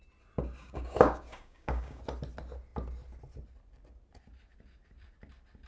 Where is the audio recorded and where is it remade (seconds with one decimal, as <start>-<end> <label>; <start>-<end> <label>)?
0.0-0.6 recorded; 0.6-2.0 remade; 2.0-5.7 recorded